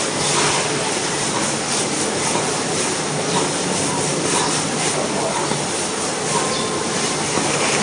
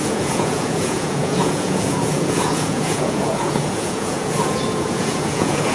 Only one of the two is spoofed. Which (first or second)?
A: second